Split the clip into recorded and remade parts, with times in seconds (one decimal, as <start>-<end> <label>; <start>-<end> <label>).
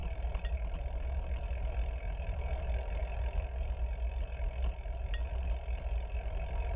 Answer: 0.0-6.8 recorded